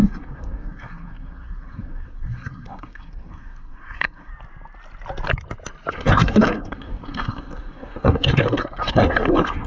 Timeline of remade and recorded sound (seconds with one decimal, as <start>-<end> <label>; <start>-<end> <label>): 0.0-4.3 remade; 4.3-5.9 recorded; 5.9-9.7 remade